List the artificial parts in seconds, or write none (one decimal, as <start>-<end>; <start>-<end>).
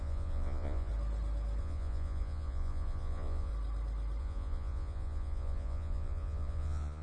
0.0-0.9; 1.6-3.5; 4.2-7.0